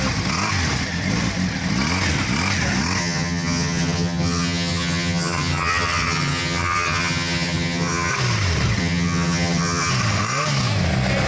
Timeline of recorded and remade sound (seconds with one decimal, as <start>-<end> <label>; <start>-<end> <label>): 0.0-3.0 recorded; 3.0-8.1 remade; 8.1-8.8 recorded; 8.8-9.9 remade; 9.9-11.3 recorded